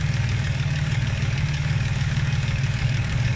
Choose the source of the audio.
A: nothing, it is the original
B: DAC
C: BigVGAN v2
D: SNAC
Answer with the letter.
B